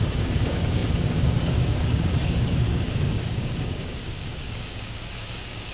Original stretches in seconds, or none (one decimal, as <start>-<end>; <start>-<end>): none